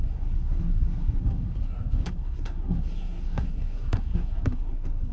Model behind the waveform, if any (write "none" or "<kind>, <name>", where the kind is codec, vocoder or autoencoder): codec, SNAC